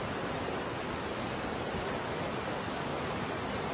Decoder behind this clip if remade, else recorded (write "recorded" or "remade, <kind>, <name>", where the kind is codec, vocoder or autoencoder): recorded